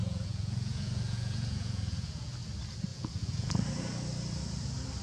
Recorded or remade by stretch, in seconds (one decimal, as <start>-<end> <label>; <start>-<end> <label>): 0.0-2.3 remade; 2.3-2.9 recorded; 2.9-3.5 remade; 3.5-5.0 recorded